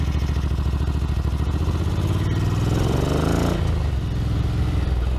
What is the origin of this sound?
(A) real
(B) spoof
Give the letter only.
A